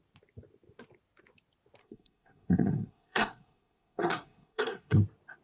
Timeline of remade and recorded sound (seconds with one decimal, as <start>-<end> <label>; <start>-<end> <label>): 0.0-1.8 recorded; 1.8-5.0 remade; 5.0-5.4 recorded